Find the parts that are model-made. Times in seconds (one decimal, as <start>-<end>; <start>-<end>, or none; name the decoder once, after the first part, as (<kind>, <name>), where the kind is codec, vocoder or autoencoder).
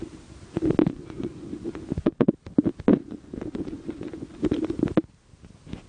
0.8-2.3 (vocoder, Vocos); 2.9-4.4